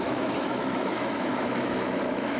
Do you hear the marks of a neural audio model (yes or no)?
yes